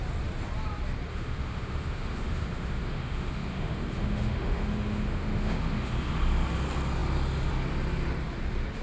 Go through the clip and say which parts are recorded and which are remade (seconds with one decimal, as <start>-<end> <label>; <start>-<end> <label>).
0.0-1.1 recorded; 1.1-6.1 remade; 6.1-8.8 recorded